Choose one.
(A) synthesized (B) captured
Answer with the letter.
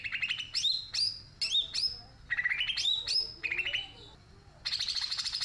B